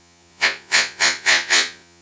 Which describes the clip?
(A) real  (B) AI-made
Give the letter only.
B